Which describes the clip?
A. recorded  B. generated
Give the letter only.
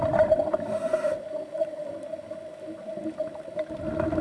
A